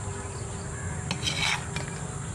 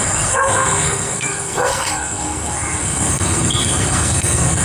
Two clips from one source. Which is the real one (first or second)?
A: first